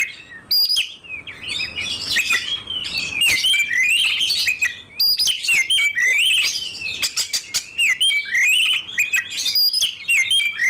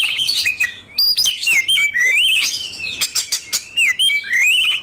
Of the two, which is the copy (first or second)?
second